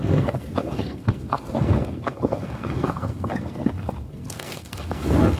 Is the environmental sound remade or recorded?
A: remade